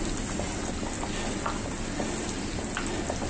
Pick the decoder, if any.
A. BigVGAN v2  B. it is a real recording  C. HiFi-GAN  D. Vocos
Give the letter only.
B